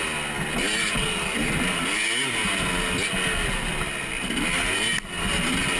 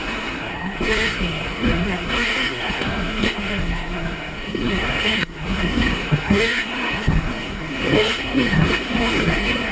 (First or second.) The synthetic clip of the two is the second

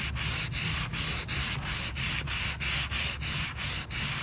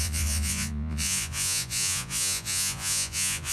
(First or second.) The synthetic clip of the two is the second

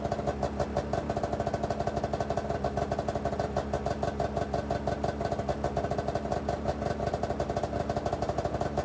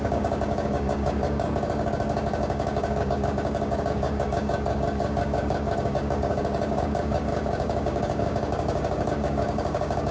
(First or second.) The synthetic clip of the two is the second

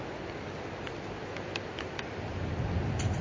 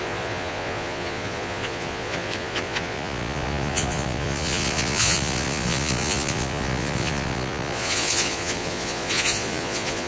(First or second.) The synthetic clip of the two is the second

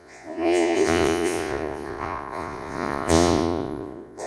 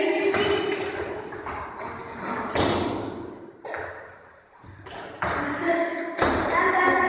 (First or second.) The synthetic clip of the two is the first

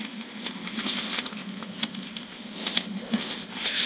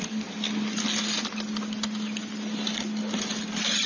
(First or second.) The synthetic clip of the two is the first